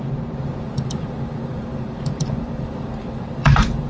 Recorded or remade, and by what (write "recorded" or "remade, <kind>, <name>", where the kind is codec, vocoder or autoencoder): remade, vocoder, BigVGAN v2